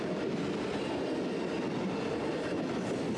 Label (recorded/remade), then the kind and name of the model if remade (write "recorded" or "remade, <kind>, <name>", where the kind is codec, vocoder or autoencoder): remade, vocoder, BigVGAN v2